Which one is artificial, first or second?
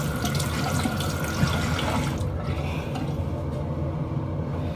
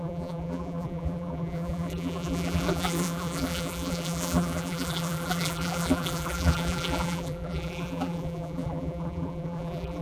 second